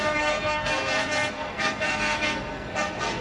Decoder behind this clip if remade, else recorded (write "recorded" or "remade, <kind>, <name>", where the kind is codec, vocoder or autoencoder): remade, codec, SNAC